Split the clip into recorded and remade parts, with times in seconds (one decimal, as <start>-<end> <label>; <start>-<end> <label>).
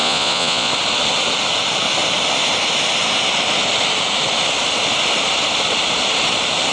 0.0-0.7 remade; 0.7-6.7 recorded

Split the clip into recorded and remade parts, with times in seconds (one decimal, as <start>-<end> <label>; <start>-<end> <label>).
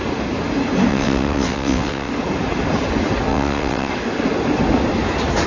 0.0-0.9 recorded; 0.9-2.1 remade; 2.1-3.3 recorded; 3.3-3.9 remade; 3.9-5.5 recorded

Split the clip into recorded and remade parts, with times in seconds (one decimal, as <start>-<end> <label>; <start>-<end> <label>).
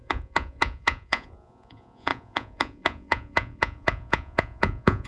0.0-5.1 remade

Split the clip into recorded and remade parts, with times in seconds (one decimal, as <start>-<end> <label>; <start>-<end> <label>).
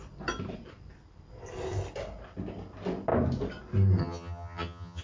0.0-4.0 recorded; 4.0-5.0 remade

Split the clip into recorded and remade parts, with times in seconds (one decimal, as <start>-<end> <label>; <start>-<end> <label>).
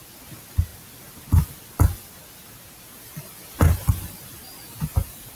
0.0-5.4 recorded